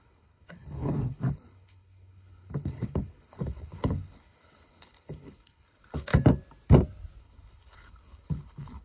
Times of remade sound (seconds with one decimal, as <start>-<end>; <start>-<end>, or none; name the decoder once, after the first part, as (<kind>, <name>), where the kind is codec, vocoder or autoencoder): 0.0-6.1 (codec, HILCodec); 7.2-8.8